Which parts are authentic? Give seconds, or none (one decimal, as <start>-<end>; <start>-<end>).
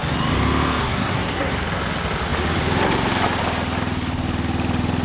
0.0-0.8; 1.5-5.0